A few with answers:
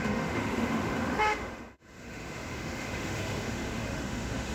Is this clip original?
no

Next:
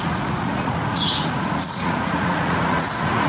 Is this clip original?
no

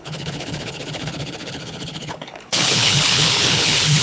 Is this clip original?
no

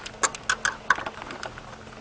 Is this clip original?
yes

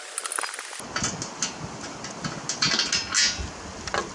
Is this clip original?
yes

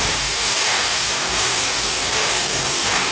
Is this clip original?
no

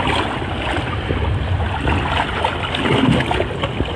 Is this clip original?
yes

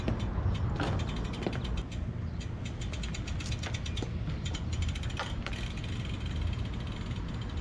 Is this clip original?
yes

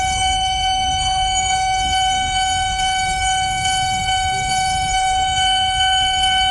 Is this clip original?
no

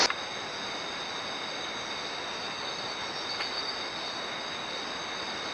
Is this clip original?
yes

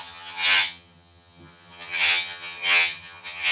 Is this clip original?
no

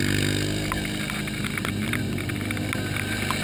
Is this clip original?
yes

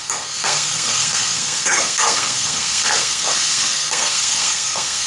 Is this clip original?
no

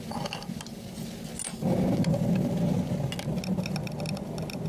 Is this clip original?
yes